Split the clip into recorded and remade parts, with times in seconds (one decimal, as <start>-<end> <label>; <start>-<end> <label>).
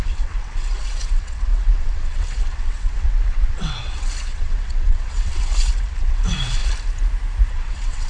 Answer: 0.0-6.6 remade; 6.6-7.5 recorded; 7.5-8.1 remade